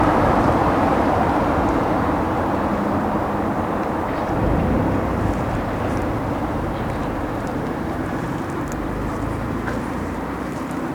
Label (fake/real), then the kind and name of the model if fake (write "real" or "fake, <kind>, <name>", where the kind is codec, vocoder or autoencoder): fake, vocoder, BigVGAN v2